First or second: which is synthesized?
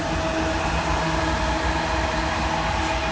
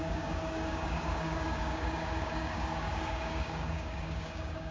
second